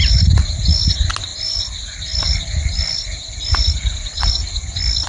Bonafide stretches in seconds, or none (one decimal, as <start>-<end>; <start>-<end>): 0.0-5.1